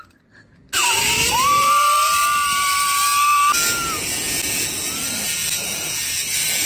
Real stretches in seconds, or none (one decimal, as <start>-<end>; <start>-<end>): 2.2-6.2